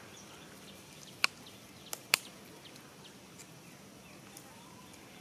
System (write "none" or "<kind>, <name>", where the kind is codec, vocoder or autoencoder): none